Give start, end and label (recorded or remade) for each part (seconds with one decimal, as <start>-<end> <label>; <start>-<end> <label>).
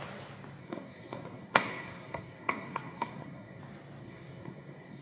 0.0-0.6 recorded; 0.6-3.6 remade; 3.6-4.0 recorded; 4.0-5.0 remade